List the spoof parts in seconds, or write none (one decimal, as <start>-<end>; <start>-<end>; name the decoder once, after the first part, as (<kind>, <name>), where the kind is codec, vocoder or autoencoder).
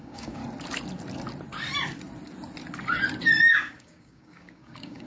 0.0-0.4 (codec, DAC); 3.5-5.1